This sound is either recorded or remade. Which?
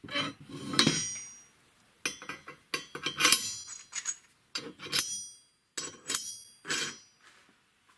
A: recorded